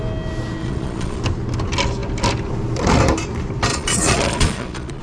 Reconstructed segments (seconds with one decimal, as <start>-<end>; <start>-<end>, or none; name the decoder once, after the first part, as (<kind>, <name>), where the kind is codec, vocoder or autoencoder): 0.6-1.2 (vocoder, Vocos); 3.7-5.0